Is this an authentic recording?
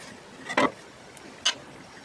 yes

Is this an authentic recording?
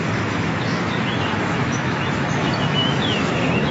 no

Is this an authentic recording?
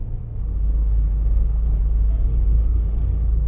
yes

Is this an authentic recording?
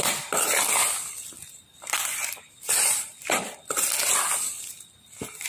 no